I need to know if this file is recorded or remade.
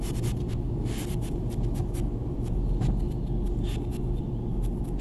recorded